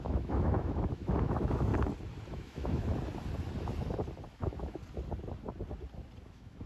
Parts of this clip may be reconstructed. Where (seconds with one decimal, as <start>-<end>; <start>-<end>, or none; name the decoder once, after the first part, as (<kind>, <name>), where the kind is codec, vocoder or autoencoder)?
0.0-1.7 (autoencoder, DAC-VAE); 2.3-2.9; 4.3-4.8; 6.2-6.7